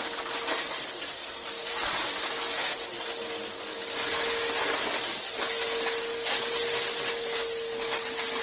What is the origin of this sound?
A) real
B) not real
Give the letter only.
A